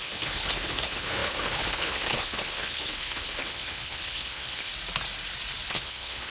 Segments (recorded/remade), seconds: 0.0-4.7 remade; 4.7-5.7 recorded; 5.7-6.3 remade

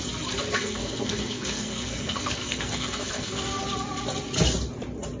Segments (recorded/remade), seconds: 0.0-0.5 recorded; 0.5-3.6 remade; 3.6-5.2 recorded

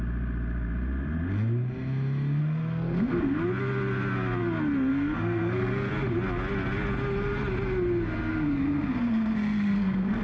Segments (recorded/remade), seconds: 0.0-2.4 recorded; 2.4-3.4 remade; 3.4-4.9 recorded; 4.9-5.9 remade; 5.9-8.3 recorded; 8.3-10.2 remade

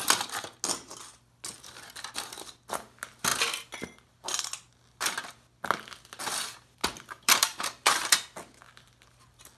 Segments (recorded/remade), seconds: 0.0-6.8 recorded; 6.8-8.4 remade; 8.4-9.6 recorded

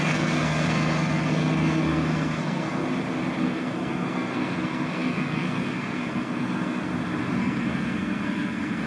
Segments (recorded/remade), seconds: 0.0-2.8 remade; 2.8-3.4 recorded; 3.4-6.9 remade; 6.9-7.4 recorded; 7.4-8.9 remade

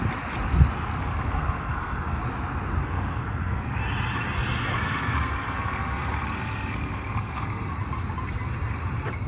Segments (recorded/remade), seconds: 0.0-1.0 recorded; 1.0-2.2 remade; 2.2-2.8 recorded; 2.8-3.8 remade; 3.8-4.7 recorded; 4.7-7.7 remade; 7.7-9.3 recorded

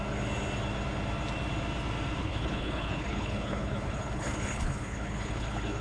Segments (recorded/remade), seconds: 0.0-2.2 recorded; 2.2-5.8 remade